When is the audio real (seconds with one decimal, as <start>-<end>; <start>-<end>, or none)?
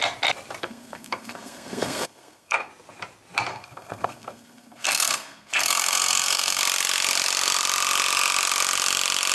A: 0.0-0.6; 2.7-3.5; 6.6-9.3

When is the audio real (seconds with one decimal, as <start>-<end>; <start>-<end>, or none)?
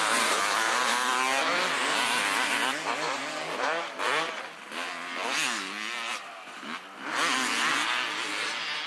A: 0.0-8.9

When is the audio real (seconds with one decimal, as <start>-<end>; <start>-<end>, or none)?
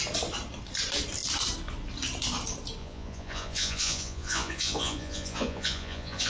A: 0.0-2.8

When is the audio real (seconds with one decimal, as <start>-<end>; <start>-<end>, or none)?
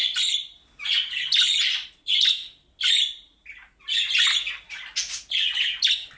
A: 0.0-6.2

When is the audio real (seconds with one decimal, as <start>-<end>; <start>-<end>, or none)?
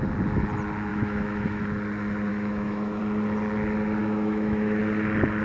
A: 0.0-0.9; 1.6-2.3; 3.0-4.0; 4.8-5.4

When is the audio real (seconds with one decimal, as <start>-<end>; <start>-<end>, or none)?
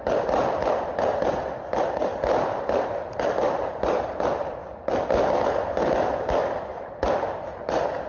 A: 0.0-8.1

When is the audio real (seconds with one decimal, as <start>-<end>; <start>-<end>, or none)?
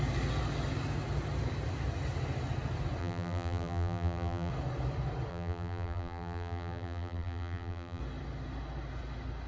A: 0.0-3.0; 4.5-5.3; 8.0-9.5